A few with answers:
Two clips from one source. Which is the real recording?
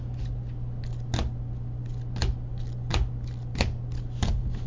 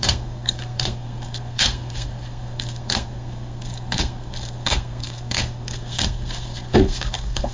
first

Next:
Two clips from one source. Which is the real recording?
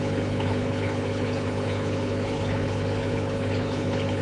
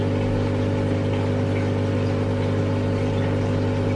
second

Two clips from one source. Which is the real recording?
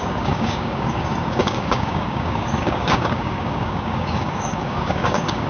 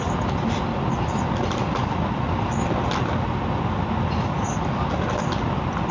second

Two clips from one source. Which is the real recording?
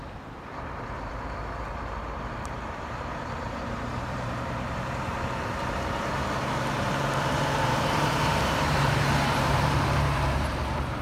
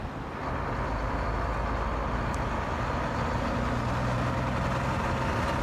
second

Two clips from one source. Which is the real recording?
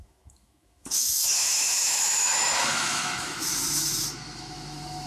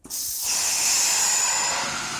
second